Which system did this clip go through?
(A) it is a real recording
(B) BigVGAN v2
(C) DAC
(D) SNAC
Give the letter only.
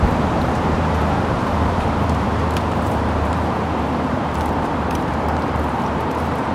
B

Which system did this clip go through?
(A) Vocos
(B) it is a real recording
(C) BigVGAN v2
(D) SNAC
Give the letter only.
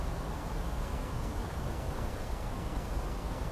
D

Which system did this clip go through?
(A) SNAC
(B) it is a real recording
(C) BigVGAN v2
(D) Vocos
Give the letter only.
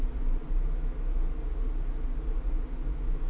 B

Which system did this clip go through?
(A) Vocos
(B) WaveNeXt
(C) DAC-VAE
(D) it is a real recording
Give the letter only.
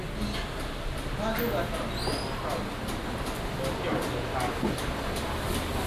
D